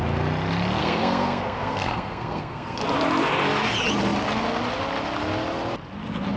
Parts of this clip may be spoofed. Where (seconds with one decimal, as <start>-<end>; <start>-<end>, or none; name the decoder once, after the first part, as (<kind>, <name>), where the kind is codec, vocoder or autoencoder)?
0.8-2.8 (codec, SNAC)